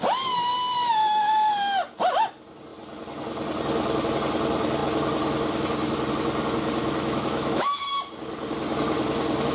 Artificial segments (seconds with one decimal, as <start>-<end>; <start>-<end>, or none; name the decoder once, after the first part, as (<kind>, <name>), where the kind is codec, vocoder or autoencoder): 6.8-7.9 (autoencoder, DAC-VAE)